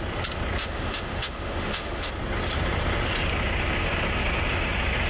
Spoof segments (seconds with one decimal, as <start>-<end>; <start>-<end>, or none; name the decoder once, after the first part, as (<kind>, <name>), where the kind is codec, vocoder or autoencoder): 0.6-2.1 (autoencoder, DAC-VAE)